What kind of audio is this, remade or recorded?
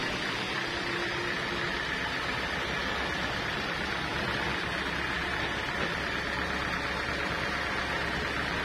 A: recorded